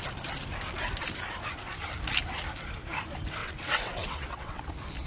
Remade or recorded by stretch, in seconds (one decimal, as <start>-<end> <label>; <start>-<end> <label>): 0.0-3.4 recorded; 3.4-4.6 remade; 4.6-5.1 recorded